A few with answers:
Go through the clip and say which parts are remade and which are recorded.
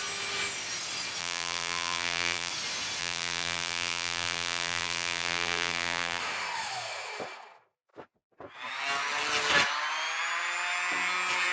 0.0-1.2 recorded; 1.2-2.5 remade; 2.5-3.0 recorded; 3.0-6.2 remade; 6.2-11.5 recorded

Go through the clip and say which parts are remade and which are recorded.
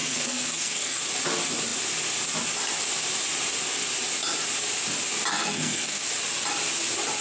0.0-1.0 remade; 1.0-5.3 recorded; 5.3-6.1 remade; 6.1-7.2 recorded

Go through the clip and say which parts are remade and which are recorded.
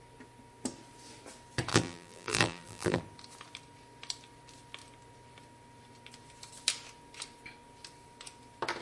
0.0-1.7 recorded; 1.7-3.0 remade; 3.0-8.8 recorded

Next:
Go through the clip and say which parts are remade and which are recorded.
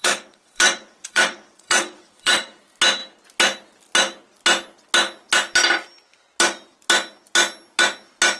0.0-2.6 remade; 2.6-8.4 recorded